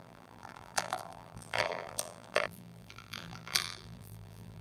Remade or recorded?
remade